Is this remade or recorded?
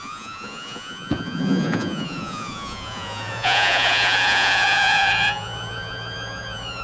remade